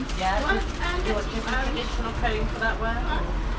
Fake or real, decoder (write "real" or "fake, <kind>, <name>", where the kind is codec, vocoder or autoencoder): real